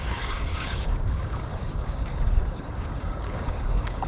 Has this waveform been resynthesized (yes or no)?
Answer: yes